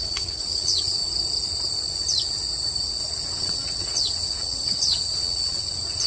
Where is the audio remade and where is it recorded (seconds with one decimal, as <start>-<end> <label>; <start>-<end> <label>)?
0.0-1.0 remade; 1.0-3.3 recorded; 3.3-6.1 remade